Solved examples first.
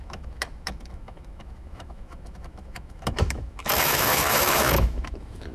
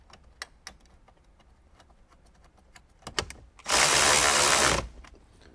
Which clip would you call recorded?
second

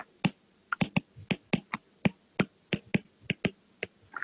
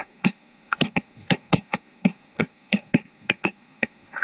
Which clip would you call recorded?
first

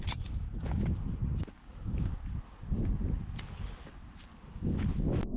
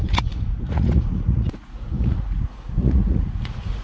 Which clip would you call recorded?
first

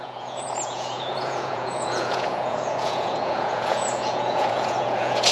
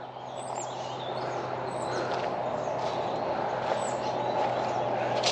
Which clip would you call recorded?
second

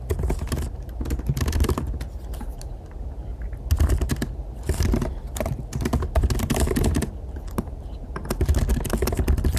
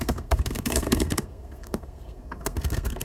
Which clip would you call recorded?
first